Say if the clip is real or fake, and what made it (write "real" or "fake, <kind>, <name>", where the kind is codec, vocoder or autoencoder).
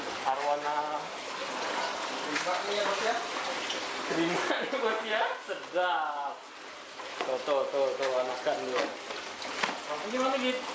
real